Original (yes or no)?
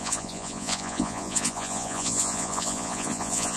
no